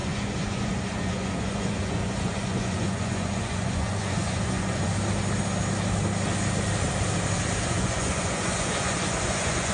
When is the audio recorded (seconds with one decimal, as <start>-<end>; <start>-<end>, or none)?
4.9-7.6